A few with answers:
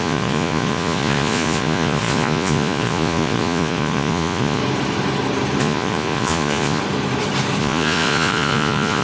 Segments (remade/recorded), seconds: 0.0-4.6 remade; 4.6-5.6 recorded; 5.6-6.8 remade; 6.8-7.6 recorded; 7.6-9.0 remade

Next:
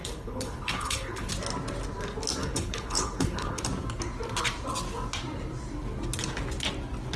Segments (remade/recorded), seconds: 0.0-1.3 remade; 1.3-2.4 recorded; 2.4-3.6 remade; 3.6-7.2 recorded

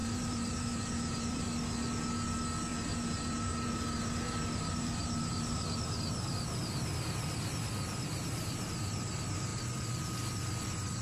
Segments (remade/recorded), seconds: 0.0-1.4 remade; 1.4-2.7 recorded; 2.7-5.8 remade; 5.8-11.0 recorded

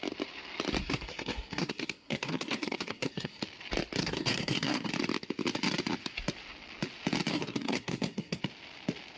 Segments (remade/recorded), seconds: 0.0-0.8 recorded; 0.8-3.4 remade; 3.4-4.0 recorded; 4.0-4.9 remade; 4.9-7.3 recorded; 7.3-8.4 remade; 8.4-9.2 recorded

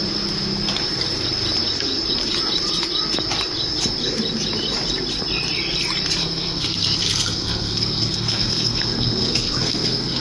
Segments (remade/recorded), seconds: 0.0-6.2 recorded; 6.2-10.2 remade

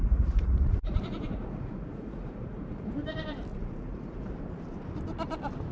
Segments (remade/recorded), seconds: 0.0-2.9 remade; 2.9-3.5 recorded; 3.5-4.3 remade; 4.3-5.7 recorded

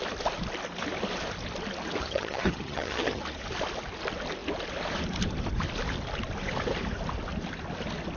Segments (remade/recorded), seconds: 0.0-2.0 recorded; 2.0-3.2 remade; 3.2-8.2 recorded

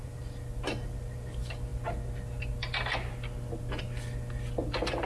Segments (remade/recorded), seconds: 0.0-5.1 recorded